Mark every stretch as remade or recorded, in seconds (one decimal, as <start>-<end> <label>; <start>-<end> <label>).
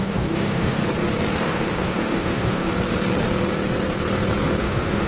0.0-0.8 remade; 0.8-1.4 recorded; 1.4-2.7 remade; 2.7-4.6 recorded; 4.6-5.1 remade